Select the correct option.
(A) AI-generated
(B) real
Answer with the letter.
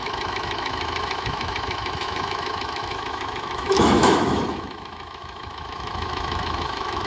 A